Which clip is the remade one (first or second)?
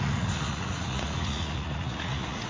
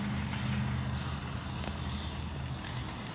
first